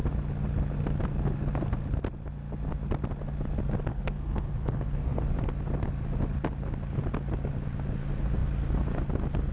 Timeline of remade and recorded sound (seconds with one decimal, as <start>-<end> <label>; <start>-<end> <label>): 0.0-3.9 recorded; 3.9-5.2 remade; 5.2-9.5 recorded